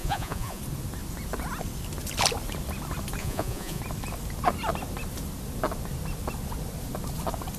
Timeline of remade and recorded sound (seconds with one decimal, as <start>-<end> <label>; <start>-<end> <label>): 0.0-0.6 remade; 0.6-3.2 recorded; 3.2-3.8 remade; 3.8-7.6 recorded